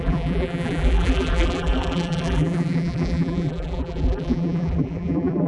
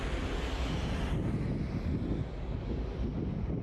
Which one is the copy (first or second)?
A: first